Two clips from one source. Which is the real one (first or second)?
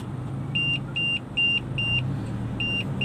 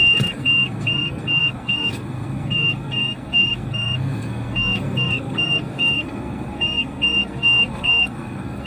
first